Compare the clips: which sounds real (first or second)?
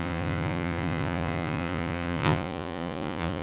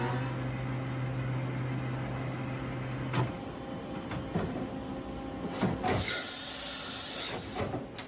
second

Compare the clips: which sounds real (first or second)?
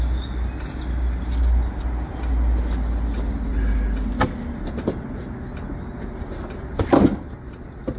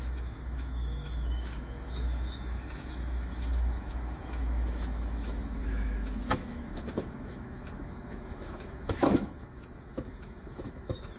first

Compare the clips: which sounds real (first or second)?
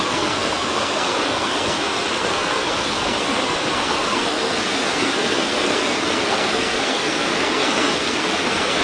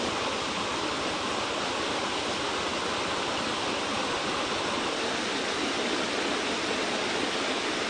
second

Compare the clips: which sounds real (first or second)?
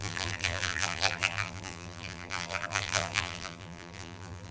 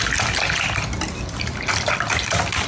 second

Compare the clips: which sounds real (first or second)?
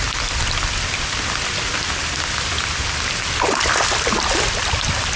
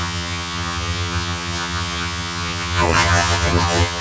first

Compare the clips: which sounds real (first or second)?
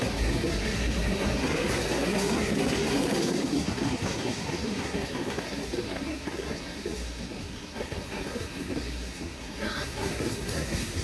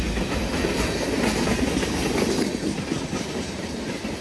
second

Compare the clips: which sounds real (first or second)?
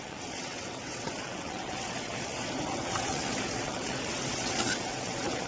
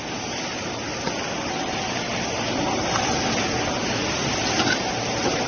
second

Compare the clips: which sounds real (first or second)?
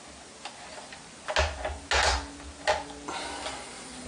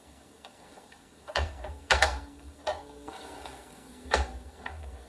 first